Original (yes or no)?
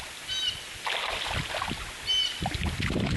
yes